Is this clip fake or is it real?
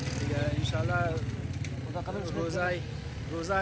real